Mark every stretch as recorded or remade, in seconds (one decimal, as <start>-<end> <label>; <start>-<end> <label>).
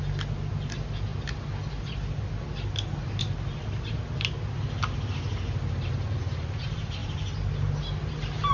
0.0-8.5 recorded